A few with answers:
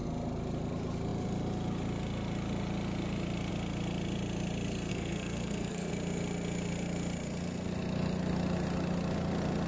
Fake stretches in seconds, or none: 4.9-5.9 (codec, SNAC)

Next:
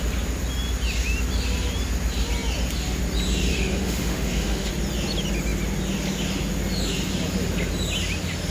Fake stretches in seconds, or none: 3.5-4.7 (autoencoder, DAC-VAE)

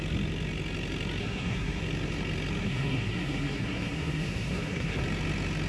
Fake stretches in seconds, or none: 1.2-1.8 (codec, SNAC); 2.6-5.0